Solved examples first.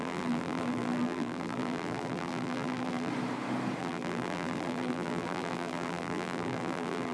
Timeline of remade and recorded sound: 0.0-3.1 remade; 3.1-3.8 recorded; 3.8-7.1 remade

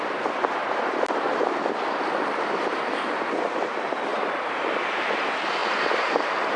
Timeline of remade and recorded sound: 0.0-4.1 recorded; 4.1-5.1 remade; 5.1-5.6 recorded; 5.6-6.6 remade

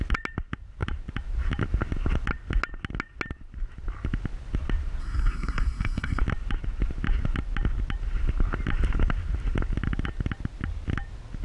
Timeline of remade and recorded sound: 0.0-5.0 recorded; 5.0-6.2 remade; 6.2-11.4 recorded